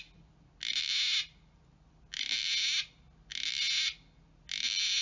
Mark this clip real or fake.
real